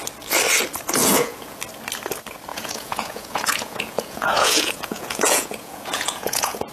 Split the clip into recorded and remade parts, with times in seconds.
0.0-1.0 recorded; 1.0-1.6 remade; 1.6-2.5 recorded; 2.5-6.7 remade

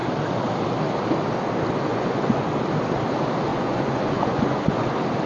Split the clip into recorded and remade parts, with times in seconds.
0.0-1.9 recorded; 1.9-2.5 remade; 2.5-3.5 recorded; 3.5-4.8 remade; 4.8-5.3 recorded

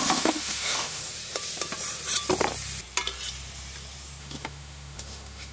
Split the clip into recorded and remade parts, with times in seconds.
0.0-1.0 remade; 1.0-4.2 recorded; 4.2-5.5 remade

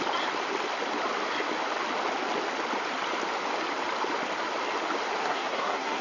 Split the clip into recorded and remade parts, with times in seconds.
0.0-5.2 recorded; 5.2-6.0 remade